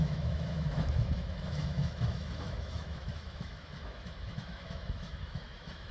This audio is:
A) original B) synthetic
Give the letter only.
B